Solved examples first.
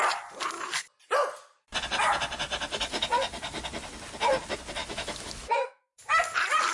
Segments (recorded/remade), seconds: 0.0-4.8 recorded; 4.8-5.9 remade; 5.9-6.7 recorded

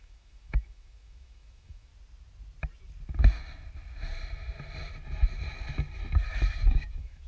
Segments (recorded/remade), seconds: 0.0-1.9 remade; 1.9-6.3 recorded; 6.3-7.3 remade

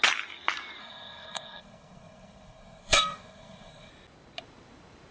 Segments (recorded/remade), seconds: 0.0-0.8 recorded; 0.8-3.9 remade; 3.9-5.1 recorded